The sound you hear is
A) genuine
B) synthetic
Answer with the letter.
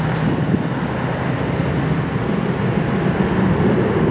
A